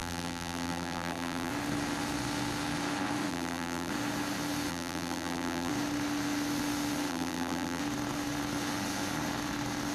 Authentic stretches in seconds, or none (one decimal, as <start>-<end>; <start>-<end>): 1.5-3.3; 3.9-4.7; 5.7-7.1; 7.8-9.9